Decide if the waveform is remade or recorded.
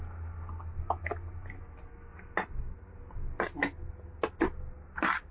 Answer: recorded